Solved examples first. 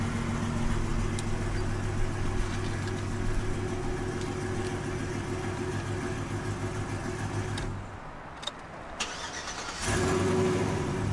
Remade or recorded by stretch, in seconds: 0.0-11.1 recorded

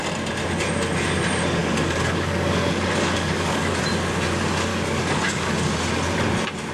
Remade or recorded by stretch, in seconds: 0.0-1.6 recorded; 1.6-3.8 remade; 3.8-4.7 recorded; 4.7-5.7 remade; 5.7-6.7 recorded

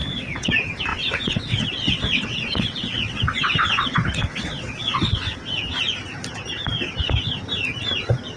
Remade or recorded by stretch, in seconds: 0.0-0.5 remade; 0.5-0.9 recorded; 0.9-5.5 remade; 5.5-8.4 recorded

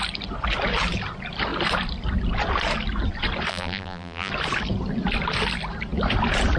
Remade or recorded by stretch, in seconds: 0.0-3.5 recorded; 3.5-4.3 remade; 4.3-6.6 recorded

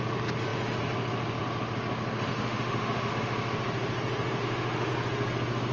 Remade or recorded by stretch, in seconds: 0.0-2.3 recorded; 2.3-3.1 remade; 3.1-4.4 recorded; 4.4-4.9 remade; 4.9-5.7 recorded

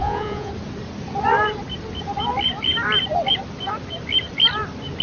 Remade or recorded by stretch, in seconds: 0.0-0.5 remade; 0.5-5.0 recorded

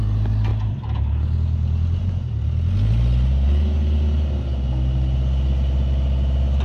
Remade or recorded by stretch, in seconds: 0.0-6.6 recorded

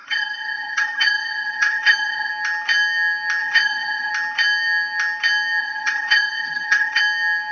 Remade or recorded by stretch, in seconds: 0.0-2.3 remade; 2.3-3.4 recorded; 3.4-4.1 remade; 4.1-5.6 recorded; 5.6-7.0 remade; 7.0-7.5 recorded